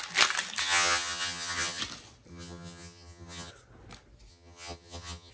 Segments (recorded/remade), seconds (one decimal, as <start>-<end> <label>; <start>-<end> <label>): 0.0-0.6 recorded; 0.6-1.8 remade; 1.8-2.3 recorded; 2.3-3.5 remade; 3.5-4.3 recorded; 4.3-5.3 remade